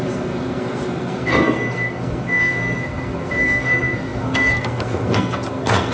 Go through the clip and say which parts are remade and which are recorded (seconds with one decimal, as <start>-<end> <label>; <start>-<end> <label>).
0.0-5.9 remade